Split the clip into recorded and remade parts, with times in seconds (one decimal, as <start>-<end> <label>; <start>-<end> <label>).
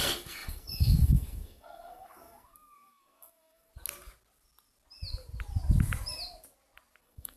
0.0-3.7 remade; 3.7-7.0 recorded; 7.0-7.4 remade